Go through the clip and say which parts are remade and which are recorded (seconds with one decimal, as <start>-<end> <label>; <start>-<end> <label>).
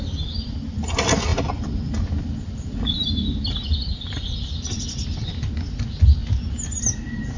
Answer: 0.0-7.4 recorded